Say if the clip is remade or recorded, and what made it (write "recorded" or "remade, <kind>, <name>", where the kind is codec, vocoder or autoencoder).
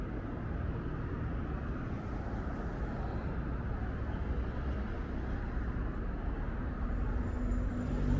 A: recorded